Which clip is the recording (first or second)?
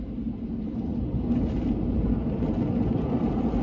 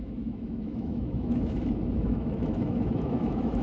first